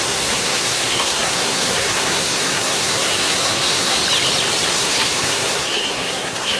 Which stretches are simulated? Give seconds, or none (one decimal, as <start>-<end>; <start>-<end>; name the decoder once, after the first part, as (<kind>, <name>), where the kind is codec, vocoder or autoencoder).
0.0-4.0 (codec, SNAC); 4.7-6.6